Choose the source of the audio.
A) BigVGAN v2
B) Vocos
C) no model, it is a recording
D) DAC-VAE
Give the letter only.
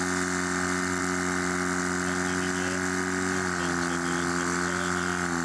C